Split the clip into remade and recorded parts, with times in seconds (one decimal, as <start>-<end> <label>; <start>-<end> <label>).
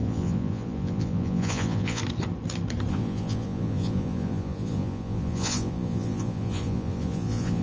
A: 0.0-2.0 remade; 2.0-2.9 recorded; 2.9-7.6 remade